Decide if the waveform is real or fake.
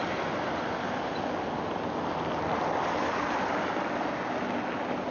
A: real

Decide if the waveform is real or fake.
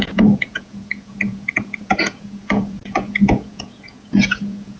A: fake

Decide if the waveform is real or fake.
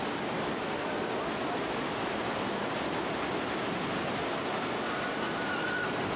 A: real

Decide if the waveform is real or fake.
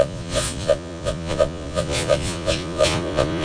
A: fake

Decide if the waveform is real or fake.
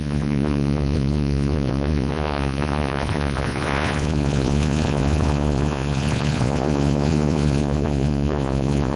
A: fake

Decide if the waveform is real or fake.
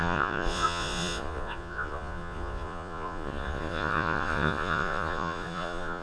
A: fake